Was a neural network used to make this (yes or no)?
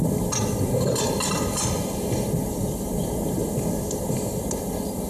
no